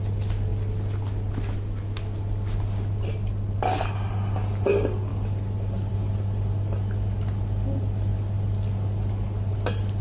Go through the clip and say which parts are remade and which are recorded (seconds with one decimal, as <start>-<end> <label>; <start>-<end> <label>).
0.0-10.0 recorded